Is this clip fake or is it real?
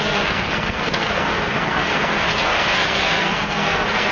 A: fake